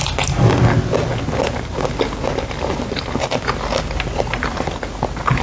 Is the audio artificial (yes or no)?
no